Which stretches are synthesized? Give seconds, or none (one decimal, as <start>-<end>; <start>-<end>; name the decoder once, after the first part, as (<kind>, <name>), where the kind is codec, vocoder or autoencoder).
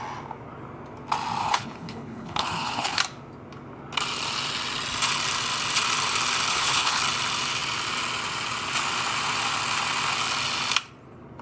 1.4-3.0 (codec, HILCodec); 6.5-7.0